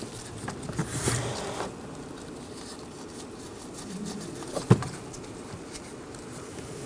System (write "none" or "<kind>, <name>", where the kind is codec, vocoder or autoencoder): none